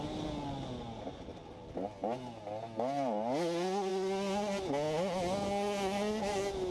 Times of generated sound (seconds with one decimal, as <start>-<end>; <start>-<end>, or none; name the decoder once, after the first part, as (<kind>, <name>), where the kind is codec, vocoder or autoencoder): none